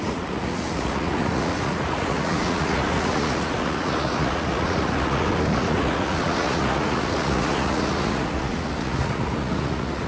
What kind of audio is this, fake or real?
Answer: fake